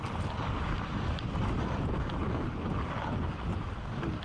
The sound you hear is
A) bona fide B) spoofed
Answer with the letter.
A